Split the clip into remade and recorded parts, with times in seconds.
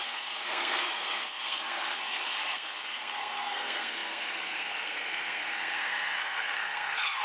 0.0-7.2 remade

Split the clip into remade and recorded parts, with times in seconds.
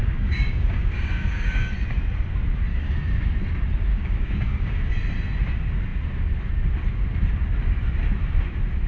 0.0-1.7 remade; 1.7-2.7 recorded; 2.7-3.3 remade; 3.3-3.9 recorded; 3.9-4.9 remade; 4.9-8.9 recorded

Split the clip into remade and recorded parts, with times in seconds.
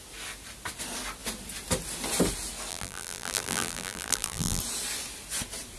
0.0-2.7 recorded; 2.7-4.6 remade; 4.6-5.8 recorded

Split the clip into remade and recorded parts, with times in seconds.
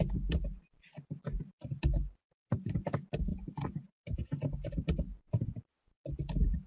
0.0-3.3 recorded; 3.3-4.0 remade; 4.0-6.7 recorded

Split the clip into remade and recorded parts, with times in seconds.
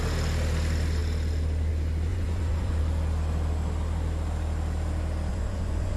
0.0-2.1 recorded; 2.1-2.8 remade; 2.8-5.3 recorded; 5.3-6.0 remade